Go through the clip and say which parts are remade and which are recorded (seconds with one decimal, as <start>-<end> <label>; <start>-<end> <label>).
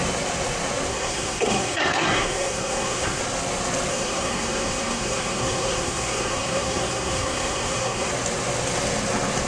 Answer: 0.0-0.9 recorded; 0.9-3.2 remade; 3.2-3.9 recorded; 3.9-8.1 remade; 8.1-9.5 recorded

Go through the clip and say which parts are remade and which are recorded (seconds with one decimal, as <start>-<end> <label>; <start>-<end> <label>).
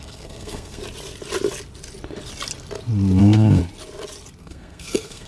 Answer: 0.0-0.8 remade; 0.8-3.2 recorded; 3.2-3.6 remade; 3.6-4.4 recorded; 4.4-5.3 remade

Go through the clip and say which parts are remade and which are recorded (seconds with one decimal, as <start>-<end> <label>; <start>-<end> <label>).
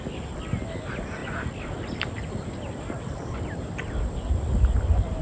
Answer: 0.0-5.2 recorded